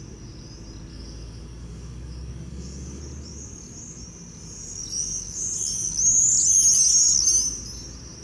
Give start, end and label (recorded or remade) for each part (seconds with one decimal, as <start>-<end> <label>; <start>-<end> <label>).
0.0-0.9 recorded; 0.9-3.0 remade; 3.0-8.2 recorded

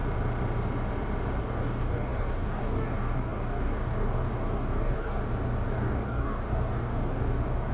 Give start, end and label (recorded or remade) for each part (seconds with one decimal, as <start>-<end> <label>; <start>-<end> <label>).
0.0-1.4 recorded; 1.4-5.2 remade; 5.2-5.7 recorded; 5.7-7.7 remade

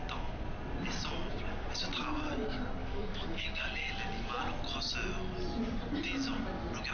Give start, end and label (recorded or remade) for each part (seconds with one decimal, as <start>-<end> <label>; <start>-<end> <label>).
0.0-2.8 recorded; 2.8-3.9 remade; 3.9-6.9 recorded